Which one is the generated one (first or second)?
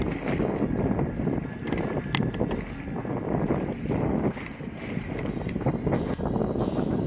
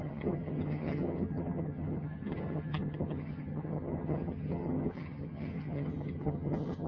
second